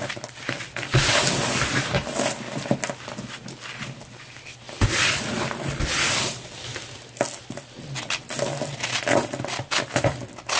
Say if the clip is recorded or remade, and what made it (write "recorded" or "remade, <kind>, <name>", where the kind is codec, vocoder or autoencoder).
recorded